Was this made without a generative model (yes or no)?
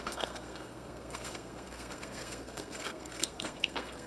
no